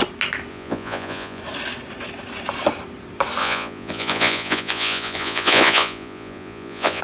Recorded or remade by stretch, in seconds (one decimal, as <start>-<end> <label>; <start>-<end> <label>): 0.0-0.5 recorded; 0.5-1.4 remade; 1.4-3.4 recorded; 3.4-7.0 remade